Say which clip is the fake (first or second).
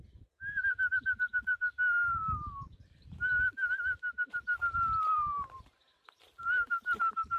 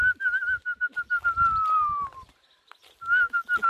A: first